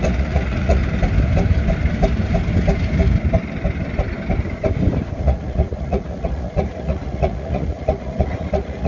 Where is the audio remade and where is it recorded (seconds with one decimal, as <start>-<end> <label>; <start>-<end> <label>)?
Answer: 0.0-0.8 remade; 0.8-5.2 recorded; 5.2-8.9 remade